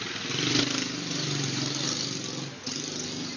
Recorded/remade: recorded